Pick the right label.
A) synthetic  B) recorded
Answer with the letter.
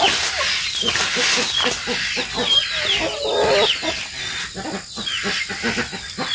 B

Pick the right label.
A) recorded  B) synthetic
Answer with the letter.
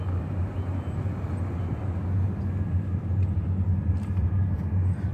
A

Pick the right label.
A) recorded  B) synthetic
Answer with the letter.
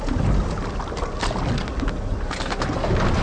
A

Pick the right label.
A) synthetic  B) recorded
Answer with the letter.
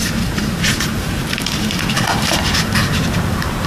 A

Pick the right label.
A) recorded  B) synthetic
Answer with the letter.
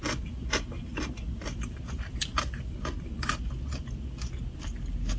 A